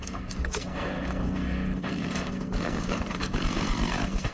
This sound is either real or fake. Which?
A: fake